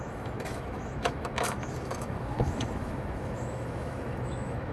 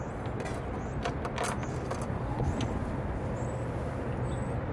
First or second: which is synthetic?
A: first